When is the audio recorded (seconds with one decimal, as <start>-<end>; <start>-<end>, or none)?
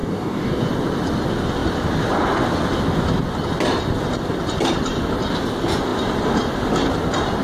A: 0.6-7.4